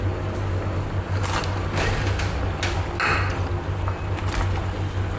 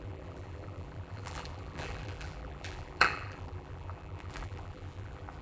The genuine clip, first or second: first